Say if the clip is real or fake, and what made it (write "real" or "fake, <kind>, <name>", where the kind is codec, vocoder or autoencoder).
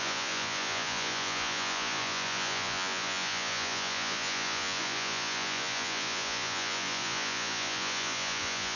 fake, vocoder, Vocos